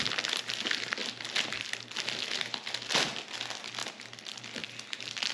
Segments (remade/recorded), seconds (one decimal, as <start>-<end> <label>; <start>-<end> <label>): 0.0-5.3 recorded